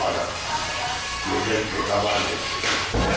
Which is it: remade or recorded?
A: recorded